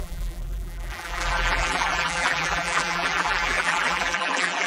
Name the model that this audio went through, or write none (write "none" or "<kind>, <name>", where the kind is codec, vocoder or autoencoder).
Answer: vocoder, BigVGAN v2